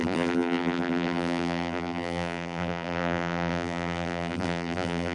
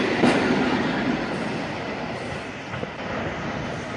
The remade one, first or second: first